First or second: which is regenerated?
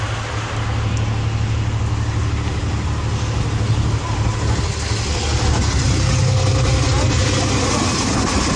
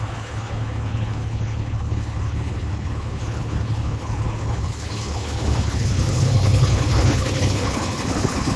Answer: second